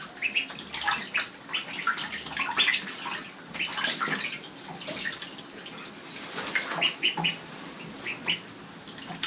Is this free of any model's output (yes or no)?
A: yes